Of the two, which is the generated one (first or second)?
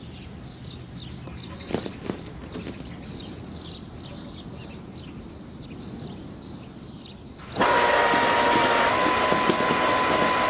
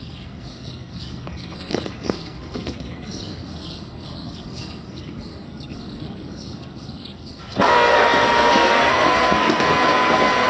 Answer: second